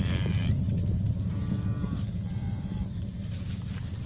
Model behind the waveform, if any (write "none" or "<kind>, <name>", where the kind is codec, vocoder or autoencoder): vocoder, BigVGAN v2